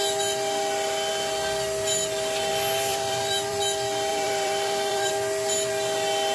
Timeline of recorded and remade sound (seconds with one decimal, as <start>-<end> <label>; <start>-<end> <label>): 0.0-2.9 recorded; 2.9-3.6 remade; 3.6-4.1 recorded; 4.1-5.1 remade; 5.1-6.3 recorded